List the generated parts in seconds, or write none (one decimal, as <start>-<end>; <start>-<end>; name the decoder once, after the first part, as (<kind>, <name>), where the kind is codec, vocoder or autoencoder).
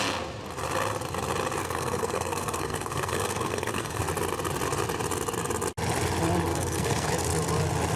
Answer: 1.6-4.1 (codec, SNAC); 6.5-7.1